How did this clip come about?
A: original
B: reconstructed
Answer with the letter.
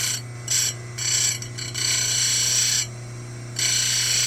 A